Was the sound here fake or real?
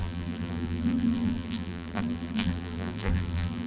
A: fake